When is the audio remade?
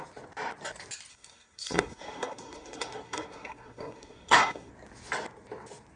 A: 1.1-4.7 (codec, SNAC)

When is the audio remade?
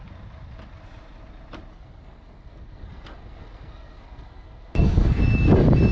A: 1.7-5.2 (codec, SNAC)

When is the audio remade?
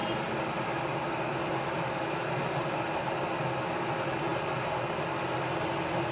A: none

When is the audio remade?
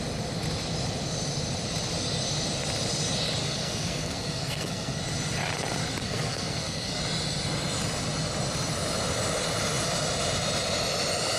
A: 3.4-5.0 (codec, SNAC); 6.0-7.0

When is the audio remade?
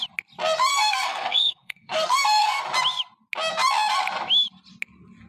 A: 0.7-2.6 (codec, SNAC)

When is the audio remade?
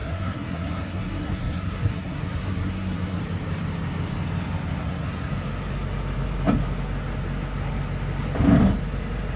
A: 0.0-3.2 (codec, SNAC); 4.8-5.3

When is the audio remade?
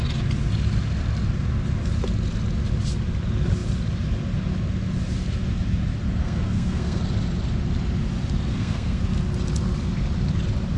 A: 6.2-7.0 (codec, SNAC); 8.5-9.0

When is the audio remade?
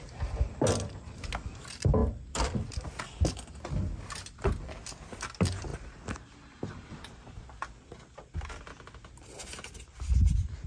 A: none